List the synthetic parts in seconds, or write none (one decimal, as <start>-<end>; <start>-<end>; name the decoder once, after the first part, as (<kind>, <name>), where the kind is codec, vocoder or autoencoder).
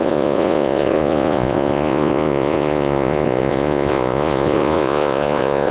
0.0-5.7 (vocoder, Vocos)